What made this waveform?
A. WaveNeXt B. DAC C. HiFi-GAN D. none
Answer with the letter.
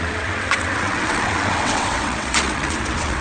A